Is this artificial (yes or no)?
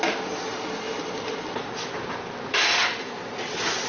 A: no